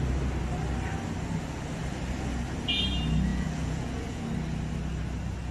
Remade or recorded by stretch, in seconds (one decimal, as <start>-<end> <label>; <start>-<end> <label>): 0.0-3.3 recorded; 3.3-4.2 remade; 4.2-5.5 recorded